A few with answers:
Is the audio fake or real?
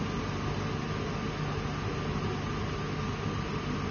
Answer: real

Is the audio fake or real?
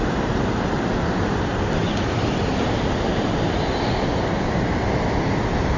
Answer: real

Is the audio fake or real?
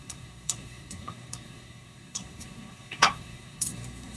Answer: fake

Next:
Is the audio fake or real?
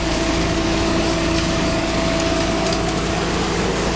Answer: fake